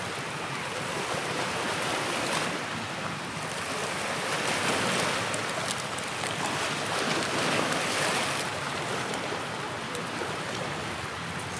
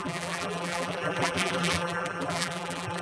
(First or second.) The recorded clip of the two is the first